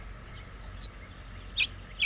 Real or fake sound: real